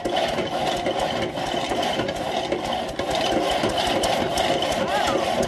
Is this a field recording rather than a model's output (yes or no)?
yes